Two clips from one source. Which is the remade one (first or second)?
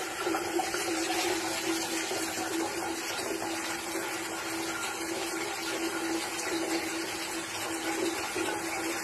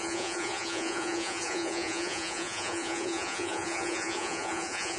second